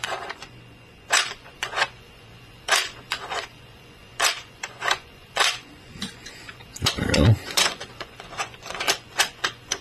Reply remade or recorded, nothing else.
remade